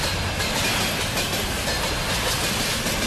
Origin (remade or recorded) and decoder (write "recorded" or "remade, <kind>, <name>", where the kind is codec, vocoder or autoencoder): recorded